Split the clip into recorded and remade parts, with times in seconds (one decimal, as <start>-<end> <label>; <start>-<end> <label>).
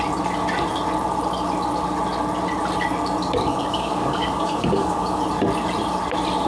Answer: 0.0-3.5 recorded; 3.5-5.2 remade; 5.2-6.5 recorded